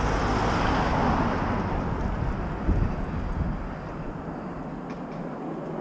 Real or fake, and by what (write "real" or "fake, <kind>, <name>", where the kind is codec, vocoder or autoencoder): real